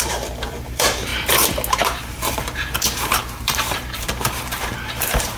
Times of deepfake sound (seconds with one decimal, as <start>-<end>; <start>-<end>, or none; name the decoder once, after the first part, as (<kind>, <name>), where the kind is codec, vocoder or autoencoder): 0.0-1.1 (vocoder, BigVGAN v2); 1.7-5.4